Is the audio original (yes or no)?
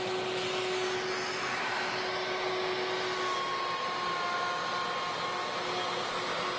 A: yes